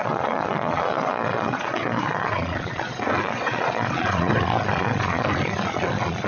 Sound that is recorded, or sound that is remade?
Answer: remade